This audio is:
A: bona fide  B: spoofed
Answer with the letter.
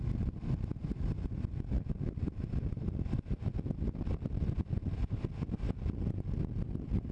A